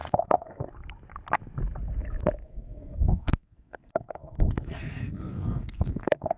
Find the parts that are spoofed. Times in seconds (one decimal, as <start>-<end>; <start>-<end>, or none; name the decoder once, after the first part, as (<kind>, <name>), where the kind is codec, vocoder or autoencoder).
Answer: 0.0-0.7 (codec, SNAC); 2.4-6.4